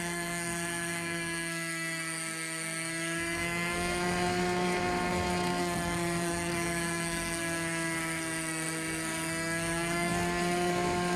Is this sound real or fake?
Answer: fake